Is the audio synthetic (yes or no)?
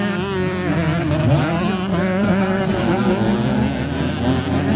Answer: no